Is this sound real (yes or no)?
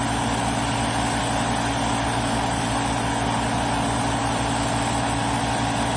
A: yes